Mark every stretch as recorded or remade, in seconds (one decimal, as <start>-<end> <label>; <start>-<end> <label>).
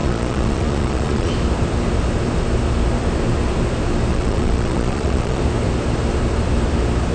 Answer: 0.0-1.3 remade; 1.3-4.1 recorded; 4.1-5.4 remade; 5.4-7.1 recorded